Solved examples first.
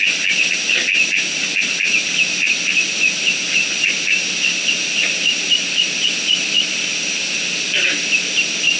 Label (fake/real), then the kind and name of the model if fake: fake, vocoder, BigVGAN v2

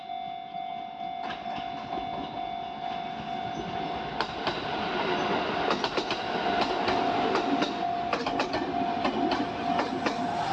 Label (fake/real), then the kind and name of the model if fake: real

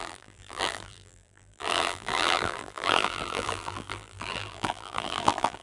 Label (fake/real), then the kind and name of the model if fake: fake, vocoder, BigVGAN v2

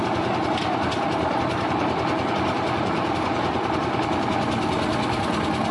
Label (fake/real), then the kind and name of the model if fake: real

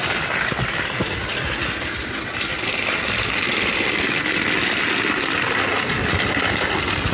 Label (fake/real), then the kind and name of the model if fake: real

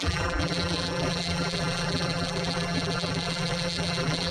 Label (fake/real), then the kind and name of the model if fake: fake, vocoder, BigVGAN v2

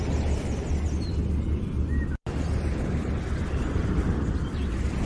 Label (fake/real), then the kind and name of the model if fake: real